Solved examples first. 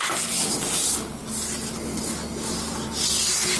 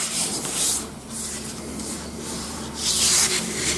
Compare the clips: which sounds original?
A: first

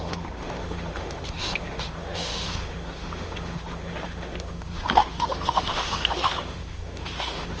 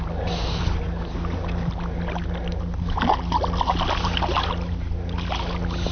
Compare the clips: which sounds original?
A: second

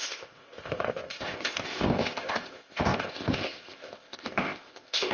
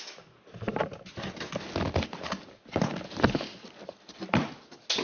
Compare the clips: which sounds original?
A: second